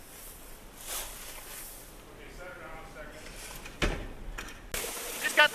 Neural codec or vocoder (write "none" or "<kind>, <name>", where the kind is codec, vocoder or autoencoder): none